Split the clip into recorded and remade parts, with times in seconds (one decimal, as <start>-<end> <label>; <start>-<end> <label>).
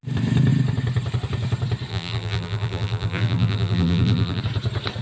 0.0-1.9 recorded; 1.9-4.4 remade; 4.4-5.0 recorded